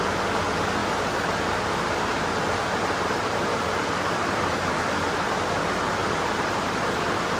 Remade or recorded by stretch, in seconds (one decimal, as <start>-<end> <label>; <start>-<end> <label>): 0.0-0.8 recorded; 0.8-4.7 remade; 4.7-6.0 recorded; 6.0-7.0 remade; 7.0-7.4 recorded